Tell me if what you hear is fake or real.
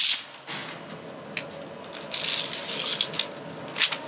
real